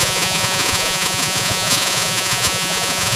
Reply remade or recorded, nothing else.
remade